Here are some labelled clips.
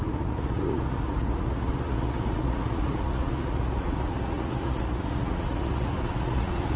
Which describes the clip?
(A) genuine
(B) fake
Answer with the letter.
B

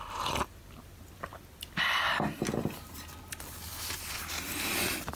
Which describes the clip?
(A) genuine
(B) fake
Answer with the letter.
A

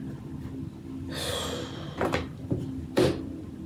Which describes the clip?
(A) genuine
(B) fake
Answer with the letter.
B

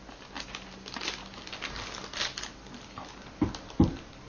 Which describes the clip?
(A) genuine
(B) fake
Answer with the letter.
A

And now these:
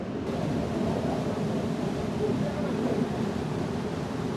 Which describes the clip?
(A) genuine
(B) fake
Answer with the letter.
A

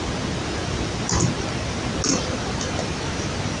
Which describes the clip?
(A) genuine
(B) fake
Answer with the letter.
A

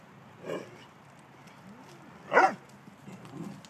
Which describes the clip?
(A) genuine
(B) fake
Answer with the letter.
A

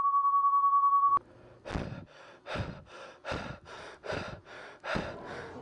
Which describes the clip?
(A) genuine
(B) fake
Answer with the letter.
A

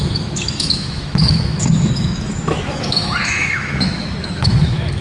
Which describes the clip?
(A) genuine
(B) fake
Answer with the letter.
B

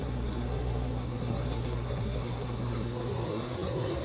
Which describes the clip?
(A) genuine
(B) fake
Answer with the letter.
B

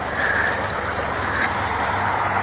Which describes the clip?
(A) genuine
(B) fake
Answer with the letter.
A